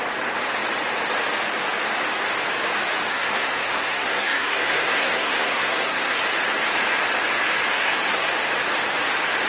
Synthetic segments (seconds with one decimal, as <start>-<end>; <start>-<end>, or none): 3.1-6.2; 7.7-8.3